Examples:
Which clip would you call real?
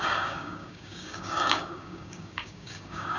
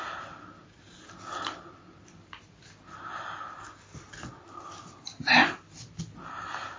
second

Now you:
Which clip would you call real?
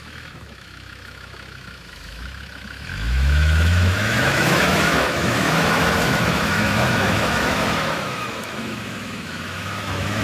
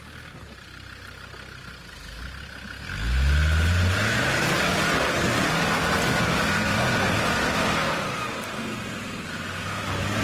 second